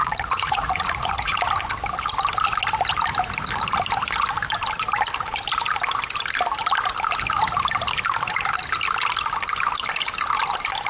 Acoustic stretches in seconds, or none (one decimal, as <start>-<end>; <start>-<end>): 1.4-10.9